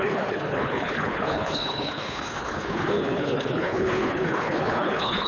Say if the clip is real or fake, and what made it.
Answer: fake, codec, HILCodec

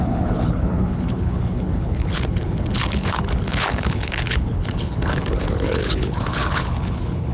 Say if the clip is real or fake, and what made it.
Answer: fake, codec, HILCodec